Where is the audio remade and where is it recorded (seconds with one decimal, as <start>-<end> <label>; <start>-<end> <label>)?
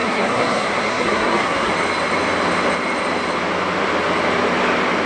0.0-1.7 remade; 1.7-5.1 recorded